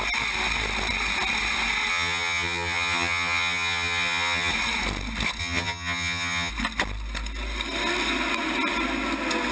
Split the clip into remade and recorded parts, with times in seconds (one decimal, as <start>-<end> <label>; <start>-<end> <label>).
0.0-1.9 recorded; 1.9-4.5 remade; 4.5-5.4 recorded; 5.4-6.5 remade; 6.5-9.5 recorded